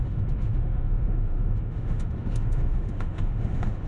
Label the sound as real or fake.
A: fake